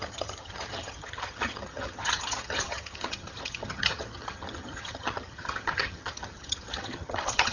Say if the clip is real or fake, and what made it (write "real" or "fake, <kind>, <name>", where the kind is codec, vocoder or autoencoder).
fake, vocoder, HiFi-GAN